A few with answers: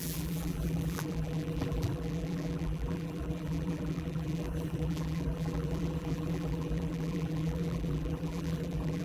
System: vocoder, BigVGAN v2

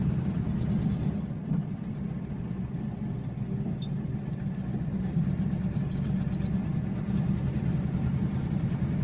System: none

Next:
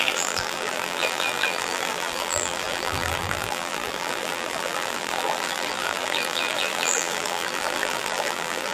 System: vocoder, BigVGAN v2